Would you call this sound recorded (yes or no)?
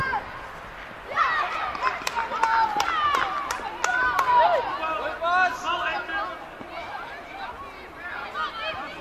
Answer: yes